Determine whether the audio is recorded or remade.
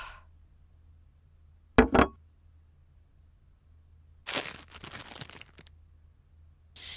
recorded